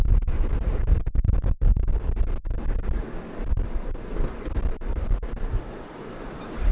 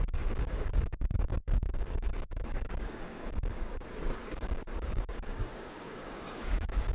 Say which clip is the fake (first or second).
second